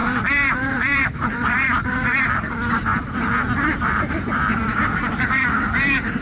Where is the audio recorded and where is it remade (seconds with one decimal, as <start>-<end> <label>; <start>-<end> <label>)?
0.0-2.9 remade; 2.9-3.7 recorded; 3.7-6.2 remade